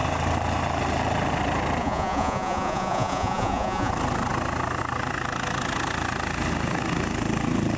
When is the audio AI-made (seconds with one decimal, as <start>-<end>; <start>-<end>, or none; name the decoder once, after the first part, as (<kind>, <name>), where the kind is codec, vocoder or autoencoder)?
1.8-3.9 (vocoder, Vocos)